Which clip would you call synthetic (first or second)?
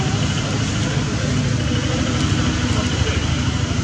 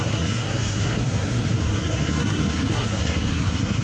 second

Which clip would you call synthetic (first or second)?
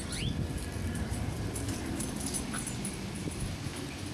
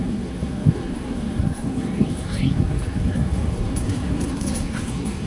second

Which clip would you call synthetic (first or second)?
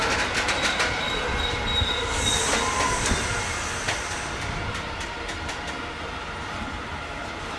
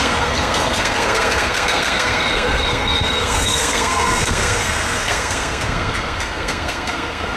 second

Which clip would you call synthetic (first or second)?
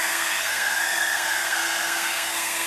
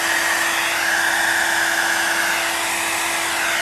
first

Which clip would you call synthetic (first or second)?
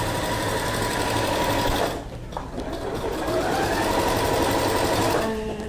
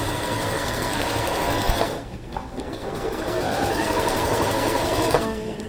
second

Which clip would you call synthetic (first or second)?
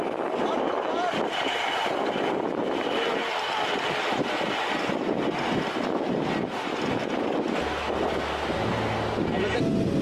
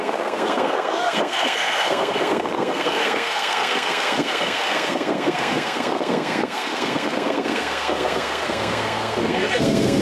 second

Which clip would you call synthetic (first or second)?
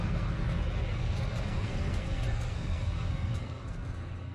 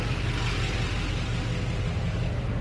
first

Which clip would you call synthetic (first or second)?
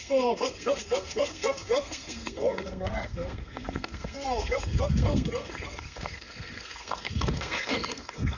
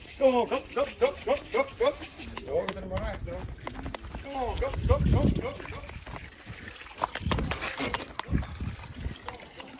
first